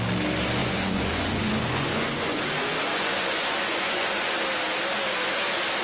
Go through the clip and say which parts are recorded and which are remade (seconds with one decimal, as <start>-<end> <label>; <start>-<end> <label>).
0.0-0.6 recorded; 0.6-2.4 remade; 2.4-2.9 recorded; 2.9-4.4 remade; 4.4-5.8 recorded